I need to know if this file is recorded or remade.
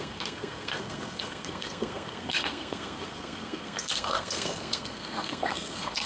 remade